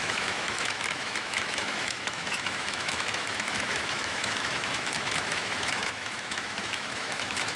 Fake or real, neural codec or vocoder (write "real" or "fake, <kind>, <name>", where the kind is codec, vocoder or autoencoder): fake, autoencoder, DAC-VAE